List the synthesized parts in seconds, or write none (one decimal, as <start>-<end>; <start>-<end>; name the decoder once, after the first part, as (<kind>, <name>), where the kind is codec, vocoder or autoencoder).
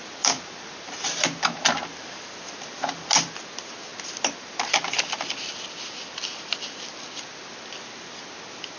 none